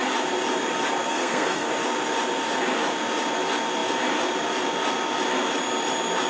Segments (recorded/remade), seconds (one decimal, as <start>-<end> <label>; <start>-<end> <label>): 0.0-1.1 recorded; 1.1-1.7 remade; 1.7-6.3 recorded